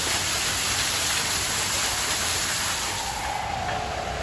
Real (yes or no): yes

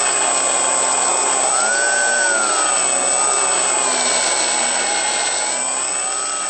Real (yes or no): yes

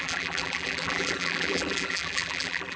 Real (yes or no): no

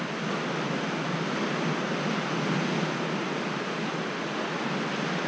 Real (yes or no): yes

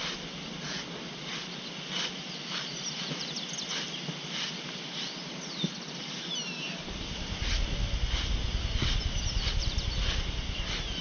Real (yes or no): yes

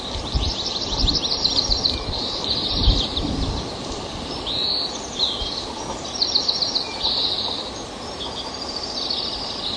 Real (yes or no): no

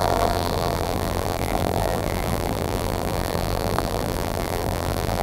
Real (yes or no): no